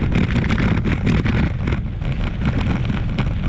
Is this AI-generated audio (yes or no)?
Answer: no